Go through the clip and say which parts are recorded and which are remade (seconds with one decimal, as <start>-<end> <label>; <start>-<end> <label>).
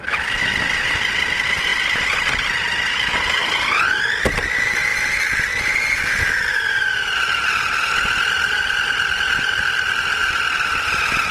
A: 0.0-11.3 recorded